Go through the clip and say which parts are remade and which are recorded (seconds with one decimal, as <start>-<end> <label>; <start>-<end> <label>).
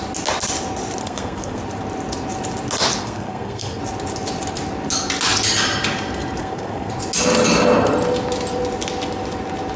0.0-1.0 recorded; 1.0-1.6 remade; 1.6-3.0 recorded; 3.0-3.8 remade; 3.8-6.4 recorded; 6.4-6.9 remade; 6.9-9.8 recorded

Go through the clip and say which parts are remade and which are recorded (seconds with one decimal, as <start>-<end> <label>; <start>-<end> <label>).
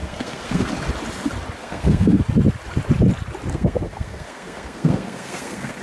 0.0-0.7 remade; 0.7-1.6 recorded; 1.6-2.2 remade; 2.2-3.5 recorded; 3.5-5.8 remade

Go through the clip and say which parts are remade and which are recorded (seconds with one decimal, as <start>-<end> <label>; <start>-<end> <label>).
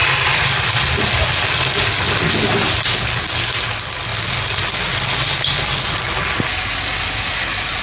0.0-7.8 recorded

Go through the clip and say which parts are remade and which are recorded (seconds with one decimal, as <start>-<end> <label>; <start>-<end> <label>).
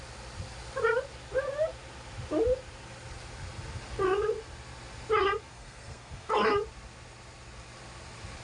0.0-5.5 recorded; 5.5-6.3 remade; 6.3-8.4 recorded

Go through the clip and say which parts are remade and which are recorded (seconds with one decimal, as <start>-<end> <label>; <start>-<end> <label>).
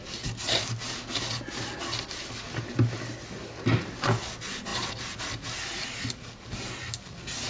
0.0-7.5 recorded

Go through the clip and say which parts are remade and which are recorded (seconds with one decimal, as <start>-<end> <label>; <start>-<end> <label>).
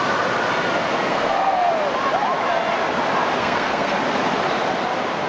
0.0-1.1 recorded; 1.1-1.7 remade; 1.7-3.4 recorded; 3.4-4.0 remade; 4.0-5.3 recorded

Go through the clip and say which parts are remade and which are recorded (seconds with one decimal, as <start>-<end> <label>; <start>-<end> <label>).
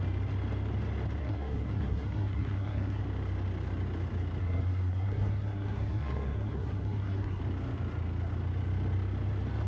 0.0-1.2 recorded; 1.2-3.0 remade; 3.0-4.4 recorded; 4.4-7.4 remade; 7.4-9.7 recorded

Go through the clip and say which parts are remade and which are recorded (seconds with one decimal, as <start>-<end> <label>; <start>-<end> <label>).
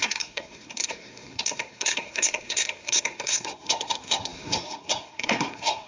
0.0-5.9 remade